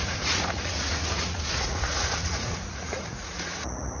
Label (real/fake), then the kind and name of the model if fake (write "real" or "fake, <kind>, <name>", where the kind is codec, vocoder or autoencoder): fake, vocoder, Vocos